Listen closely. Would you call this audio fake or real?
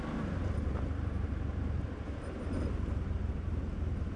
real